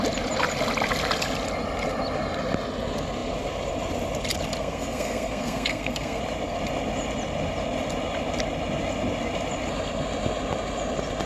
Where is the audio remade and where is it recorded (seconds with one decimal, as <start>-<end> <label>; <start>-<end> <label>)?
0.0-4.6 recorded; 4.6-6.2 remade; 6.2-11.3 recorded